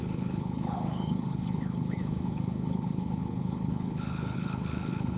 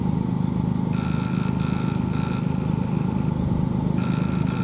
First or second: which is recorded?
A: second